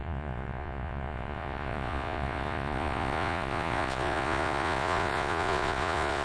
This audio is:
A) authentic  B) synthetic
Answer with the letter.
B